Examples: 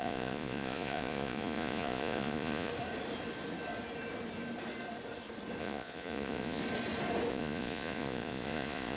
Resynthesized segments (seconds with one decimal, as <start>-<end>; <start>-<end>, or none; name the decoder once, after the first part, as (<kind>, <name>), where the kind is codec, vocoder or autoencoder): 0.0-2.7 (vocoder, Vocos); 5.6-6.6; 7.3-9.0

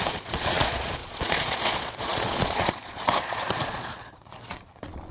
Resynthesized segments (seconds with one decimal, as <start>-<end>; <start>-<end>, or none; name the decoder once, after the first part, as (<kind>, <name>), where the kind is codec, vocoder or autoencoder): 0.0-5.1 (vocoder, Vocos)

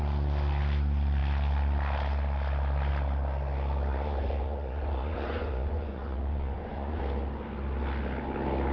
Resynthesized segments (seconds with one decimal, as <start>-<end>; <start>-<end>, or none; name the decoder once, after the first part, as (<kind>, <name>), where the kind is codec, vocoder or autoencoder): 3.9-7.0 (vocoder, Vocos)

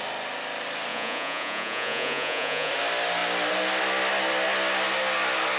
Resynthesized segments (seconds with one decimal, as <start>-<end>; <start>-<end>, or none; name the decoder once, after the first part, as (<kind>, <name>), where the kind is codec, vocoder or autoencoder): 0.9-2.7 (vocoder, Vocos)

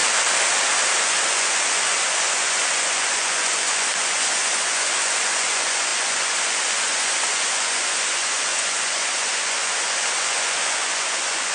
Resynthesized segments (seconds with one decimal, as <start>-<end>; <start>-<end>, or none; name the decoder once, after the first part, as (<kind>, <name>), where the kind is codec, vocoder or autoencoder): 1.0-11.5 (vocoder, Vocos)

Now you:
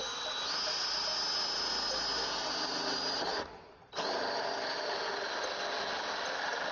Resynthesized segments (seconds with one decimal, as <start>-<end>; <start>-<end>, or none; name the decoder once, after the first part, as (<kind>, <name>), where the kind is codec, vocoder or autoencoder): none